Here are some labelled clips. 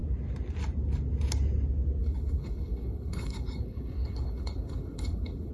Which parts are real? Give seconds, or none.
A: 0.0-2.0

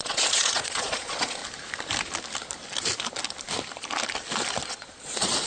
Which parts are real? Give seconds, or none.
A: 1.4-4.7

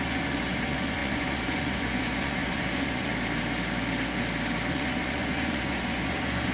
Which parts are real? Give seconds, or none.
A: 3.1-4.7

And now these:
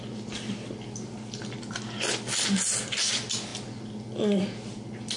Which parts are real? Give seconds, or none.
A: 0.0-5.2